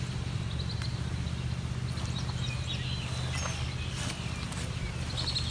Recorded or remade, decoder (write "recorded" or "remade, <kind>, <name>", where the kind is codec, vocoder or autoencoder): recorded